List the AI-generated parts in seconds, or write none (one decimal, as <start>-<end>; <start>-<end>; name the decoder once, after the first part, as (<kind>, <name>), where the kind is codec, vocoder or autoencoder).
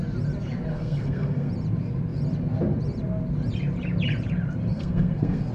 0.7-1.5 (codec, SNAC); 4.7-5.5